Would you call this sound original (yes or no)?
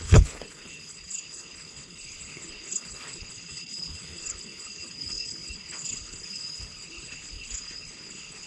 no